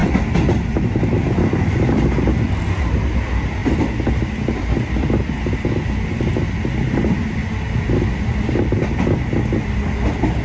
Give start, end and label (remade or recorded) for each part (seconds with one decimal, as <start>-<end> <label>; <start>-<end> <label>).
0.0-10.4 recorded